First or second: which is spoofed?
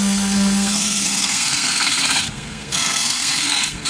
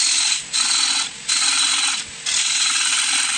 first